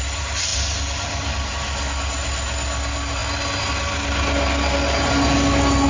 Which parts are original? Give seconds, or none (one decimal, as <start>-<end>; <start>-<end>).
0.0-5.9